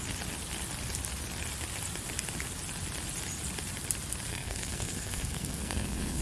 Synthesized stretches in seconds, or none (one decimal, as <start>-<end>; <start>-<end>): 4.3-6.2